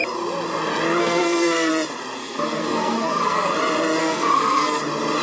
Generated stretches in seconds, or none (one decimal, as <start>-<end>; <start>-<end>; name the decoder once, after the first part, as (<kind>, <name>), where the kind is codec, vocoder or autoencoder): 1.0-1.7 (codec, SNAC); 2.2-3.5; 4.0-4.8